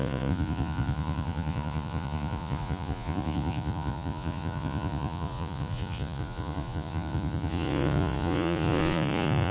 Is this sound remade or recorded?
remade